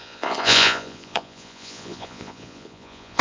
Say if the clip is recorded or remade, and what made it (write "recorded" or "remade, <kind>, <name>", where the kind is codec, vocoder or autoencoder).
remade, vocoder, Vocos